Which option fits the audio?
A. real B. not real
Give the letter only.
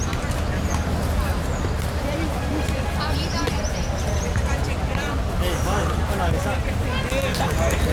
A